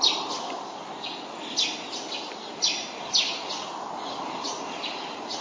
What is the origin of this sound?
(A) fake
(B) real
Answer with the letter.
B